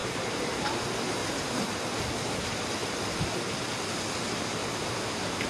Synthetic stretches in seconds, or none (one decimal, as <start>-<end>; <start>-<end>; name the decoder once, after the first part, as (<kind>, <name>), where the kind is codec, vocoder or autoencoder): 0.0-0.5 (vocoder, BigVGAN v2); 1.2-1.8; 4.6-5.5